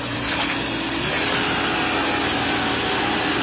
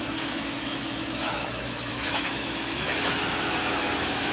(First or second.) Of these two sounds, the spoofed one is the second